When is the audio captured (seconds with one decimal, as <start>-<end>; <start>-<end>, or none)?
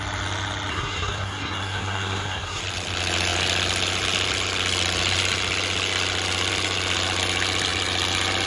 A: 0.0-0.7; 2.6-8.5